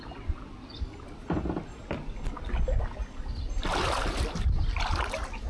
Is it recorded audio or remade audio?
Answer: recorded